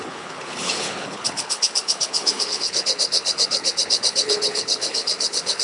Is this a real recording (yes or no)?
no